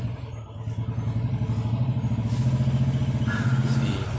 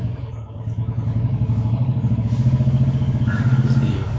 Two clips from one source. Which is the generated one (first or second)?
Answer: second